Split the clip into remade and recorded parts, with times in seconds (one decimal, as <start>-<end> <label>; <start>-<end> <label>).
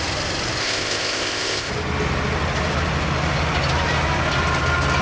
0.0-0.6 recorded; 0.6-1.7 remade; 1.7-5.0 recorded